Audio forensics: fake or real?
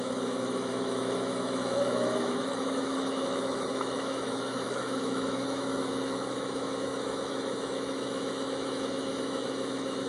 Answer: fake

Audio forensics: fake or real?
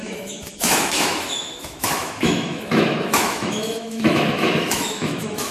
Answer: fake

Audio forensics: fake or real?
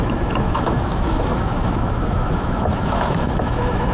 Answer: fake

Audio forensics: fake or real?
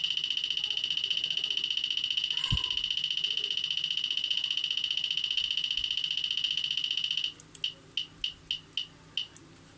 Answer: real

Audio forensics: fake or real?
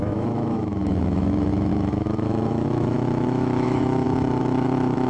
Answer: fake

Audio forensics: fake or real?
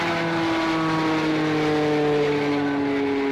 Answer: real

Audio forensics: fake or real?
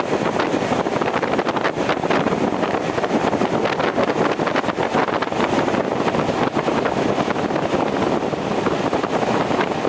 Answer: real